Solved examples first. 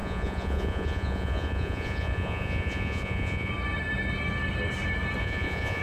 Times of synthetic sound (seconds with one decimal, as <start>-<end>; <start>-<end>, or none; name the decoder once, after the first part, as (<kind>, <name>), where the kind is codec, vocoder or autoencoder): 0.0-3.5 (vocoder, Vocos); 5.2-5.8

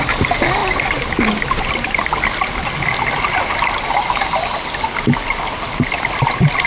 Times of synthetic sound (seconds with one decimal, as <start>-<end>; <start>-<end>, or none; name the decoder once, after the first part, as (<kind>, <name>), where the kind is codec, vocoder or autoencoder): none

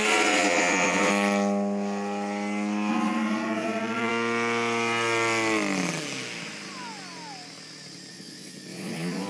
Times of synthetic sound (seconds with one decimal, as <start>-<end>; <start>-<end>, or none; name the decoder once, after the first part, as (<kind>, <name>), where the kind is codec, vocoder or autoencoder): 0.0-1.1 (vocoder, Vocos); 2.9-4.1; 8.1-9.3

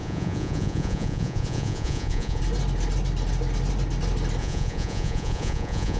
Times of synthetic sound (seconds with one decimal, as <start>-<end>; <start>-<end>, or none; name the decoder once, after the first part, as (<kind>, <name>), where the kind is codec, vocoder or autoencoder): 0.0-2.4 (vocoder, Vocos); 4.4-6.0

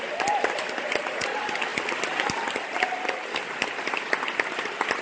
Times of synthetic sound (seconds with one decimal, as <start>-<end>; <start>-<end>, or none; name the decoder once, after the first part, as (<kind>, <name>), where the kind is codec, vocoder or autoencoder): none

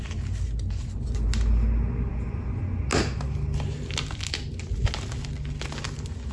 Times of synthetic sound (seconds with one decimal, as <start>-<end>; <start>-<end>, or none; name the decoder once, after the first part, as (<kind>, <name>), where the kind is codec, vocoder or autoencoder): none

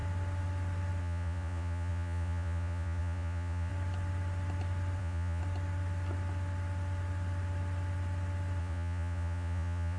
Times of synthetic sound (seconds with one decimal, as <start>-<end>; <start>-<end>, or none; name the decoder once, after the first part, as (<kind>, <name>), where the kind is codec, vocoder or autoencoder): 1.0-3.7 (vocoder, Vocos); 5.0-5.4; 8.6-10.0